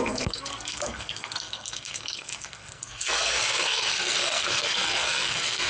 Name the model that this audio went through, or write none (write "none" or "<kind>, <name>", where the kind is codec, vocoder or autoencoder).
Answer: codec, SNAC